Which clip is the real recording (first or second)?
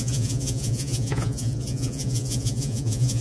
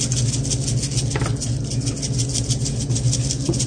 second